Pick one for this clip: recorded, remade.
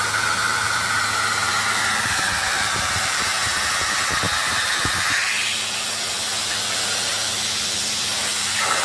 remade